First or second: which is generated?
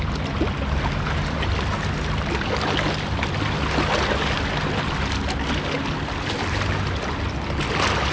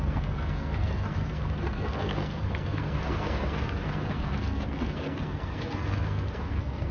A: second